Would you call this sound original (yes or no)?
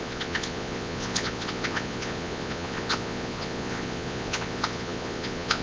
no